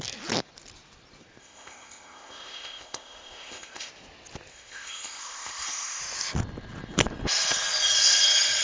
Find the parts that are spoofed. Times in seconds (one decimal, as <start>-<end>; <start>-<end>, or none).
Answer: 1.4-3.9; 4.5-6.0